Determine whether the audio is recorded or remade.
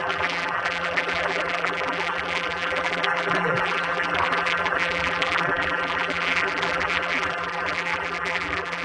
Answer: remade